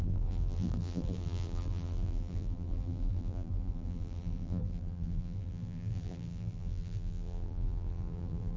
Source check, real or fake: fake